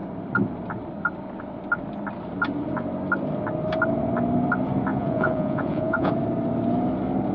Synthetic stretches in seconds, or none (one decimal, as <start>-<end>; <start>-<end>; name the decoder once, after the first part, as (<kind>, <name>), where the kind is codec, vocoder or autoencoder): 4.9-6.1 (vocoder, Vocos)